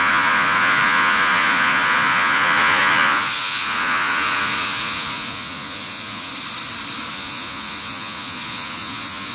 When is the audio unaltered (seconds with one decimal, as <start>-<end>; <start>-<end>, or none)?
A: 6.3-7.1